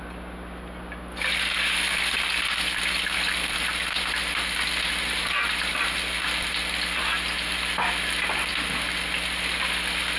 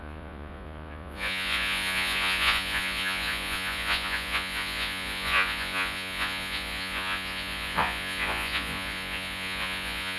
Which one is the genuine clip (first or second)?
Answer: first